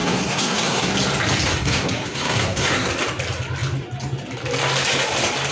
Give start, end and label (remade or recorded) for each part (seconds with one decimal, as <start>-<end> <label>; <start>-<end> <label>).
0.0-0.9 remade; 0.9-1.5 recorded; 1.5-2.9 remade; 2.9-5.5 recorded